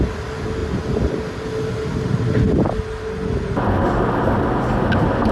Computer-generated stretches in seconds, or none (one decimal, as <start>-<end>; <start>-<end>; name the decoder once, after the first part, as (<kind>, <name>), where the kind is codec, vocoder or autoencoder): none